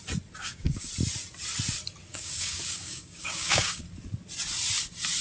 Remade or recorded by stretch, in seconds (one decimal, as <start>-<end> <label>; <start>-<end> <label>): 0.0-0.4 recorded; 0.4-0.9 remade; 0.9-2.1 recorded; 2.1-3.8 remade; 3.8-5.2 recorded